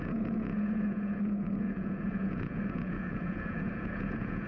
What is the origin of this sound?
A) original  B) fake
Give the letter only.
B